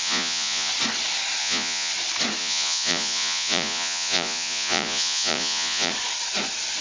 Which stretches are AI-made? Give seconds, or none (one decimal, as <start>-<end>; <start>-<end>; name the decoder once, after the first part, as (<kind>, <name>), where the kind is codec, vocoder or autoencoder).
0.0-0.7 (vocoder, Vocos); 1.4-1.9; 2.4-5.9

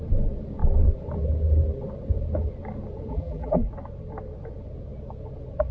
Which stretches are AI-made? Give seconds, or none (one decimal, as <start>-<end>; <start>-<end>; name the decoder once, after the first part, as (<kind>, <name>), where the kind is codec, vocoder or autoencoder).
3.1-3.7 (vocoder, BigVGAN v2)

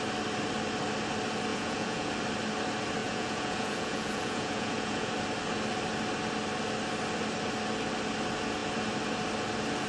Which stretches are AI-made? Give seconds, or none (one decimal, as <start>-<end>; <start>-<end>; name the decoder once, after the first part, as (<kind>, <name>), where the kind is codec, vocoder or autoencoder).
1.5-2.1 (vocoder, Vocos); 3.0-5.1

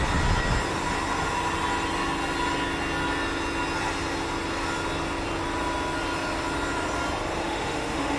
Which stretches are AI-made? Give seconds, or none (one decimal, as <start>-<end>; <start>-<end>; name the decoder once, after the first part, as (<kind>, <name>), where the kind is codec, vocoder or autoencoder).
7.4-8.2 (autoencoder, DAC-VAE)

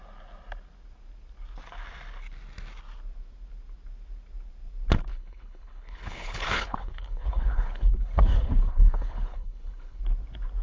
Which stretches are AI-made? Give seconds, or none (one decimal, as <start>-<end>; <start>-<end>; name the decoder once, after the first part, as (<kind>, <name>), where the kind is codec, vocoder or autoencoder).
5.1-10.0 (codec, HILCodec)